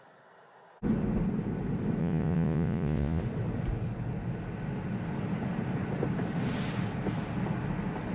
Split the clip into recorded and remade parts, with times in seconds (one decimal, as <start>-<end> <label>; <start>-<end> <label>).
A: 0.0-2.0 recorded; 2.0-3.2 remade; 3.2-8.1 recorded